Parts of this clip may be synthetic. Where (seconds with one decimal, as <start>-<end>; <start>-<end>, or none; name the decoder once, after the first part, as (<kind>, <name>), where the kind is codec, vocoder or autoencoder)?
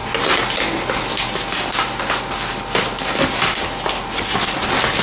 none